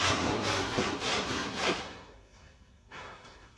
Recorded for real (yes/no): no